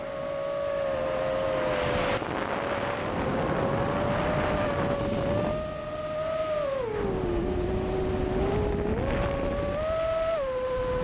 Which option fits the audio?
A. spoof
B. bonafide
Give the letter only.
B